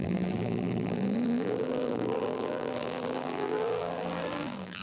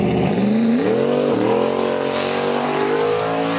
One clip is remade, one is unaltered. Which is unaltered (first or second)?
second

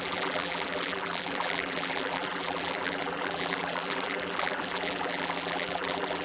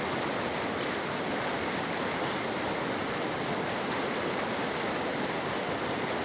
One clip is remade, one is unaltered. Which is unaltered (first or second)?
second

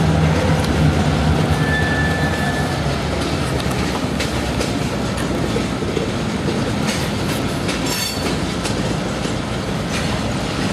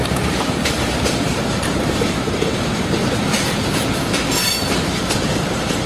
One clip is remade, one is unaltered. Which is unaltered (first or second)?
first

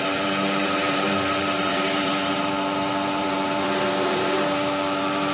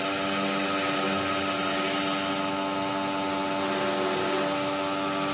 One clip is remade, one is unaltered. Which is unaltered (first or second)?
second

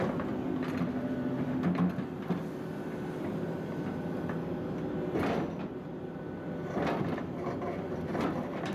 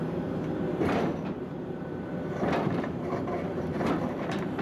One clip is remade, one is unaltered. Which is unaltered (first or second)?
first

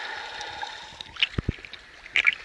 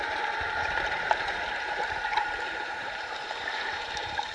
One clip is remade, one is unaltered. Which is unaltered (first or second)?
first